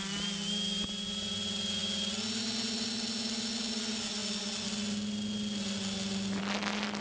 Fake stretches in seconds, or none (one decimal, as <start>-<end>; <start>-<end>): none